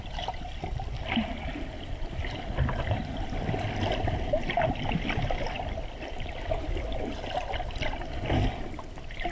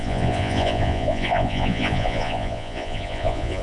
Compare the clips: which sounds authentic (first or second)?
first